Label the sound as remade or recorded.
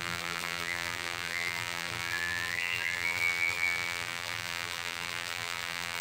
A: remade